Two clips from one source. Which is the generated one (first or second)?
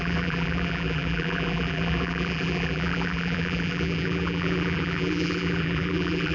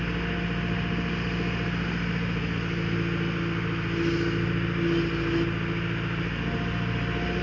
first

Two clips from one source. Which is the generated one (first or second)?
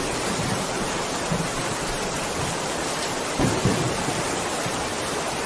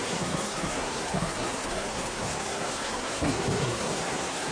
second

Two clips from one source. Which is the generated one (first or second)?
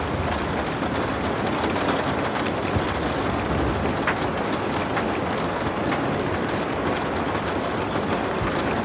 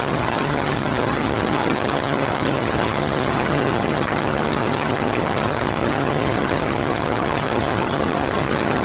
second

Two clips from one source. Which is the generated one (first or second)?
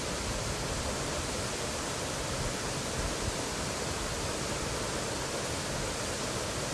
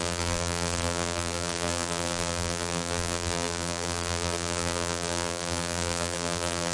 second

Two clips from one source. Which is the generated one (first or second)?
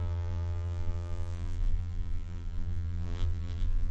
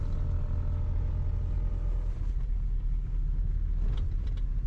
first